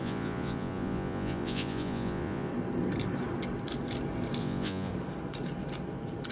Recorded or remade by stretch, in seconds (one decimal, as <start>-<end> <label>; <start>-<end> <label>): 0.0-2.5 remade; 2.5-4.4 recorded; 4.4-4.9 remade; 4.9-6.3 recorded